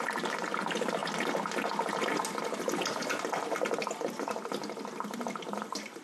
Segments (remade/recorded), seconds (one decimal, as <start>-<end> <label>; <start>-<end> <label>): 0.0-1.0 remade; 1.0-2.3 recorded; 2.3-3.0 remade; 3.0-5.5 recorded; 5.5-6.0 remade